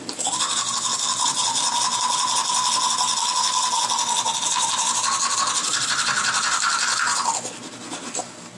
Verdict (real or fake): real